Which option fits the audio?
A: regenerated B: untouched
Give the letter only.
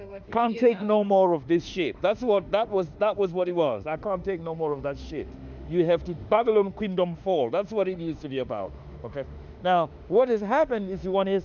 A